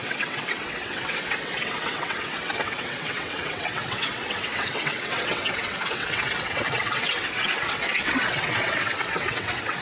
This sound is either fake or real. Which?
fake